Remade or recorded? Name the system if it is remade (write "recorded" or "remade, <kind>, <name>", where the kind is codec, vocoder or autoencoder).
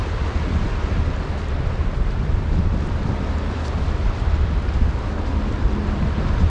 recorded